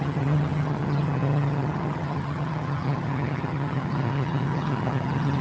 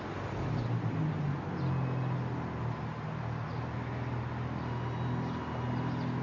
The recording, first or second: second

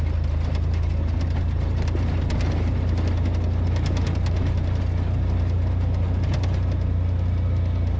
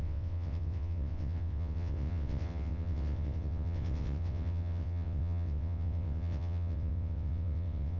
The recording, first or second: first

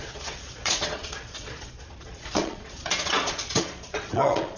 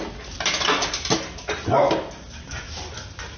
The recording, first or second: second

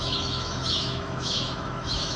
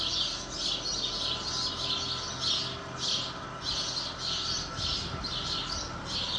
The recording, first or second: second